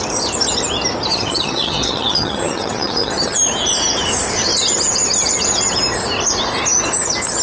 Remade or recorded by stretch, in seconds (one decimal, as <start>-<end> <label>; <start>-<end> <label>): 0.0-1.1 recorded; 1.1-3.4 remade; 3.4-7.4 recorded